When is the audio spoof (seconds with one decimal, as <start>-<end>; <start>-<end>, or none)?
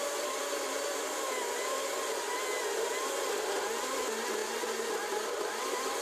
none